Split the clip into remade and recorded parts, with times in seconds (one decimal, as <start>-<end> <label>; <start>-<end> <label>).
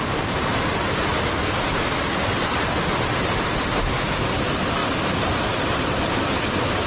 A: 0.0-1.1 remade; 1.1-3.1 recorded; 3.1-6.9 remade